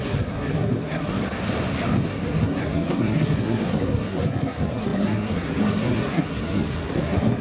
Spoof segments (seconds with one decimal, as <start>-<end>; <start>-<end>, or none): 0.0-1.2; 2.1-7.4